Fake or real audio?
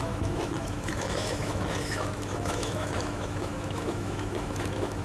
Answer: fake